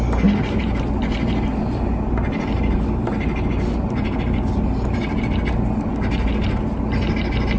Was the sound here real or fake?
real